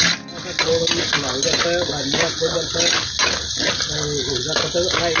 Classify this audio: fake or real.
real